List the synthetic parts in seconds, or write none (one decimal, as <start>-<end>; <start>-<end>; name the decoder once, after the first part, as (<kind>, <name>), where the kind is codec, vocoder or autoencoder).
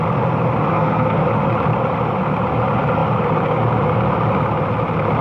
0.7-1.2 (codec, SNAC)